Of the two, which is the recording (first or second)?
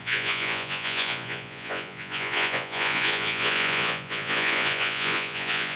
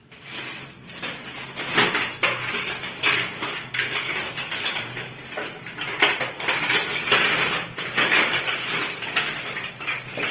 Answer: second